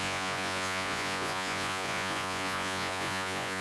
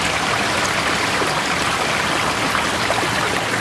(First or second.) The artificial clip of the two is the first